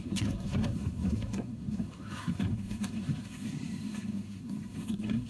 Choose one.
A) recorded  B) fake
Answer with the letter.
B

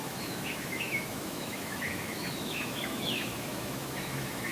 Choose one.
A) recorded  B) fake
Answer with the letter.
B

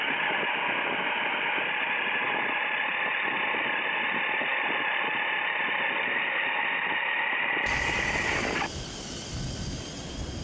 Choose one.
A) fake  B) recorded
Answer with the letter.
B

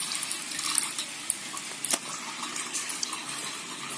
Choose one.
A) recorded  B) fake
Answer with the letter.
A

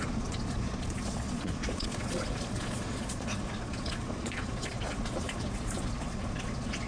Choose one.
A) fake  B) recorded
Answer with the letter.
A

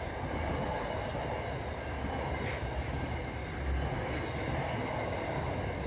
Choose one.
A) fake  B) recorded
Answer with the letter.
B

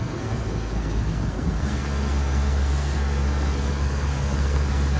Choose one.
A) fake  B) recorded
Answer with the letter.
A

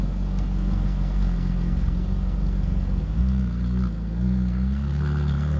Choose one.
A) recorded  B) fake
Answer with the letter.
B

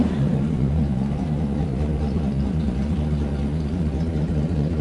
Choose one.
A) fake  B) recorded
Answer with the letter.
A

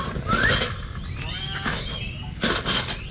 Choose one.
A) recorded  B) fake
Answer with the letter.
A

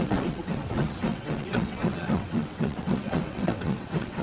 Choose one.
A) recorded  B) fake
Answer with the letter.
B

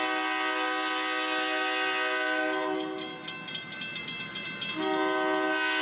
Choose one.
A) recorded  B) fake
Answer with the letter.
A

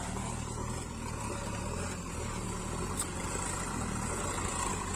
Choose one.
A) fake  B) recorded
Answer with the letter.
B